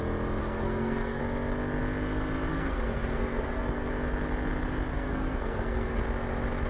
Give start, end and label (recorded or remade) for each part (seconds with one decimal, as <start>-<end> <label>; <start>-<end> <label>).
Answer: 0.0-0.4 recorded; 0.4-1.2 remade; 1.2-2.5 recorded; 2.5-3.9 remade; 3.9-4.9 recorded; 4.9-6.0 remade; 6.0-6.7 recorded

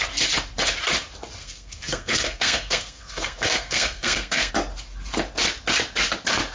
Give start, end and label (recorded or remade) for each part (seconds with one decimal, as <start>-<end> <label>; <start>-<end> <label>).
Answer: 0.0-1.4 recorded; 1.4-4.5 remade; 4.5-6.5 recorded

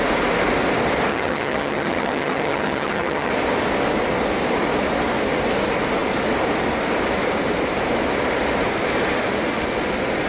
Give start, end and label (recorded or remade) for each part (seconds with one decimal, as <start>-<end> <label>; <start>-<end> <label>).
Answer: 0.0-1.1 recorded; 1.1-3.3 remade; 3.3-10.3 recorded